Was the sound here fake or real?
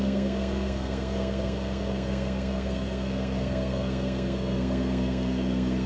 fake